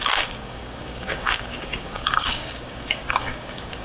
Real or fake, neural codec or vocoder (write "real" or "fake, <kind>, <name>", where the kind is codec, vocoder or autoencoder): fake, codec, DAC